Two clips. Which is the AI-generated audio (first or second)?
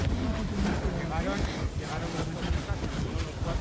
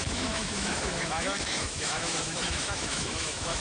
second